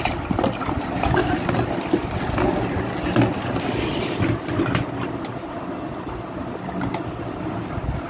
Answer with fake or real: real